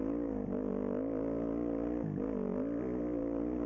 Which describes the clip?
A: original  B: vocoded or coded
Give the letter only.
A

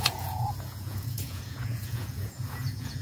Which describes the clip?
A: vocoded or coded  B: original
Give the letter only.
A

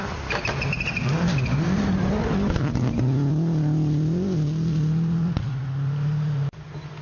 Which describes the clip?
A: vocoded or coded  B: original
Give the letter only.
B